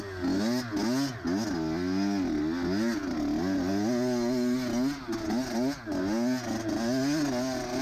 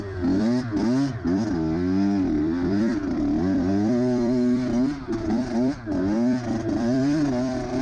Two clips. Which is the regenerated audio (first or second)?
second